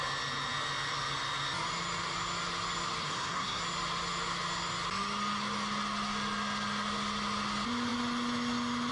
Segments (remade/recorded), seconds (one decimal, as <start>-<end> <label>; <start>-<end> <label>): 0.0-3.0 recorded; 3.0-3.6 remade; 3.6-8.9 recorded